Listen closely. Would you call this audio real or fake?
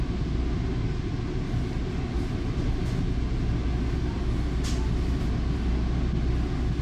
real